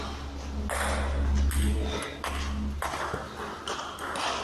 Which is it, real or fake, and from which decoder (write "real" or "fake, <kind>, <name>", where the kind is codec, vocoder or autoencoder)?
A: real